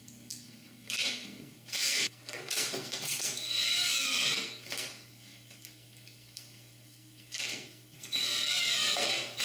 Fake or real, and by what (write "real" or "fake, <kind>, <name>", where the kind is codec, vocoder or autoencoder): fake, codec, SNAC